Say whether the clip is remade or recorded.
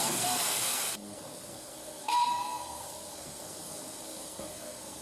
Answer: remade